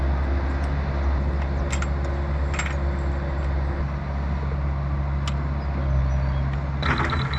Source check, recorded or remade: recorded